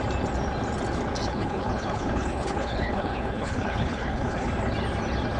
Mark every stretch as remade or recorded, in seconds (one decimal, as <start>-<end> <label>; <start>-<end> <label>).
0.0-1.3 recorded; 1.3-4.5 remade; 4.5-5.4 recorded